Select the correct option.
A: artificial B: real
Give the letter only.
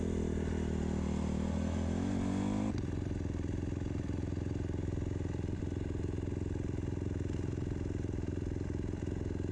B